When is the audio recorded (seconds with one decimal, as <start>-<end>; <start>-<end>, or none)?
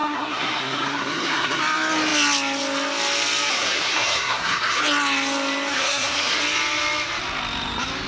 1.6-3.5; 4.8-5.7; 6.4-8.1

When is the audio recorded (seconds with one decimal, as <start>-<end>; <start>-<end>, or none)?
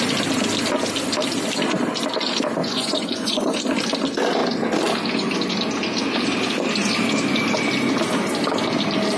0.0-2.6; 3.6-9.2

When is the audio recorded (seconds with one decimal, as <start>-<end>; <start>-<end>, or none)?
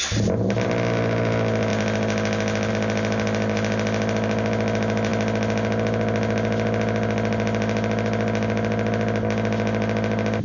0.0-10.4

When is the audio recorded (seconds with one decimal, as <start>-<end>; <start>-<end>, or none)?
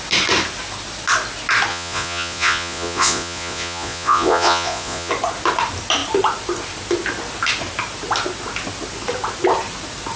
0.0-1.7; 5.1-10.2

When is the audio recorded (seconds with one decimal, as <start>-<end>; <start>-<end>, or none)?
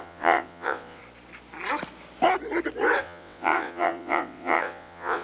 1.0-3.0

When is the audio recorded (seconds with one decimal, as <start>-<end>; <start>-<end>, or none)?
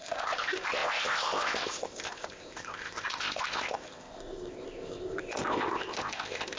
none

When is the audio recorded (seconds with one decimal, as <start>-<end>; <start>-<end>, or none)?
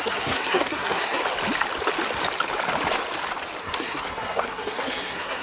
1.2-3.6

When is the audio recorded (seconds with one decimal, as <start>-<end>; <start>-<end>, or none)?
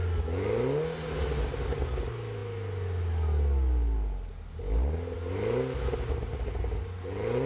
0.0-7.5